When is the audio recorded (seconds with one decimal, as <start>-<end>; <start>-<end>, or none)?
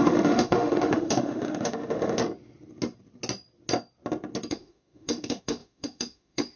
2.2-4.5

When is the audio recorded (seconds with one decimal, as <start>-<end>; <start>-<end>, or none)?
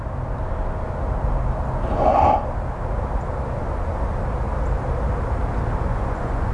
0.0-5.9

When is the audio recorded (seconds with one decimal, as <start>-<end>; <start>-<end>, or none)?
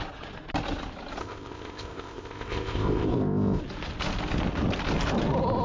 0.0-1.2; 3.6-5.6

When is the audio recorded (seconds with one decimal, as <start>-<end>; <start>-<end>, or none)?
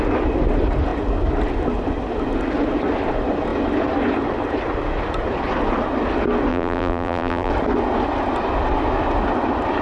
0.0-6.5; 7.5-9.8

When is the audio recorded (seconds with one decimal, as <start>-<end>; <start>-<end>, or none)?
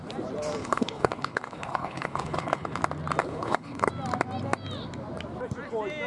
0.0-0.6; 2.8-3.2; 3.9-6.1